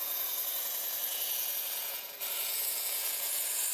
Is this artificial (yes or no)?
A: yes